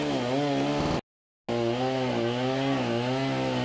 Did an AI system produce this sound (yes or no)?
no